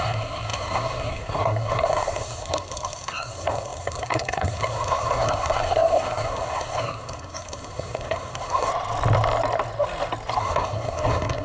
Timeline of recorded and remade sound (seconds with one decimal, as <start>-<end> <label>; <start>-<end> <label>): 0.0-8.7 remade; 8.7-10.4 recorded; 10.4-11.4 remade